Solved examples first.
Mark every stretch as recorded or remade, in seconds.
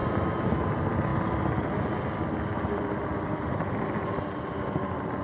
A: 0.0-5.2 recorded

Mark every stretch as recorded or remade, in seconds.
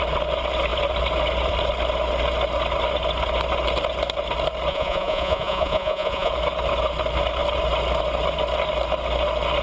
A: 0.0-4.7 recorded; 4.7-6.3 remade; 6.3-9.6 recorded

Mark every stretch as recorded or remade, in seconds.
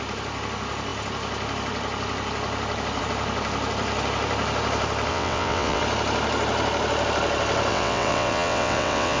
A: 0.0-5.1 recorded; 5.1-5.8 remade; 5.8-7.7 recorded; 7.7-9.2 remade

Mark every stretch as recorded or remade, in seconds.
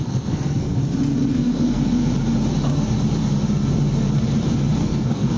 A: 0.0-0.8 remade; 0.8-1.3 recorded; 1.3-1.8 remade; 1.8-4.8 recorded; 4.8-5.4 remade